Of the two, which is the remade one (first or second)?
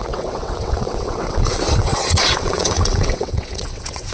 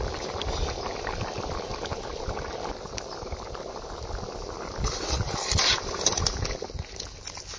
first